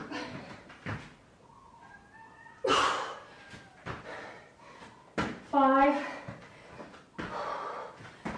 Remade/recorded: recorded